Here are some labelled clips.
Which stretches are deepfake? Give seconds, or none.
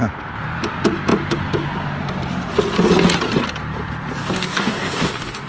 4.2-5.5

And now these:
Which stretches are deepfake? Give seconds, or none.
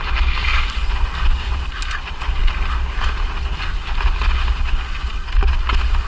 none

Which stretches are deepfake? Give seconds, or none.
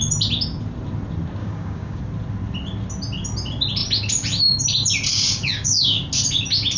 1.4-2.0; 5.1-6.0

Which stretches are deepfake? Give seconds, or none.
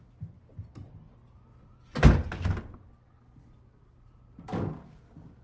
none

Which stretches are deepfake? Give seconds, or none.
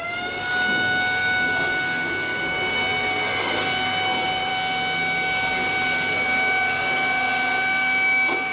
0.0-4.5; 5.0-8.5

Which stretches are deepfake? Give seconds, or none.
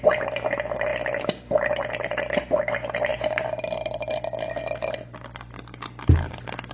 none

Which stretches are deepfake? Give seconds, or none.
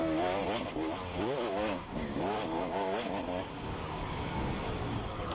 0.0-0.4; 1.5-5.3